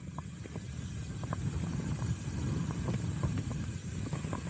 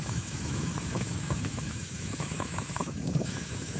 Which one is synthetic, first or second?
second